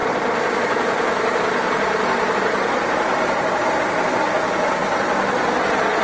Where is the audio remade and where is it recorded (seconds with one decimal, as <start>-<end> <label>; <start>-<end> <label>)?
0.0-3.6 remade; 3.6-6.0 recorded